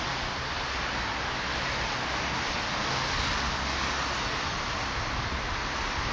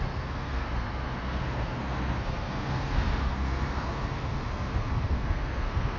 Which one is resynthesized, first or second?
second